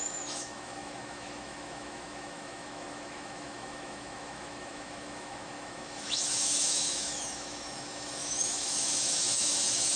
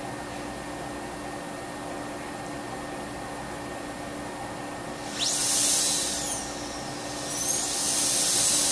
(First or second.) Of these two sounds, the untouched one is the second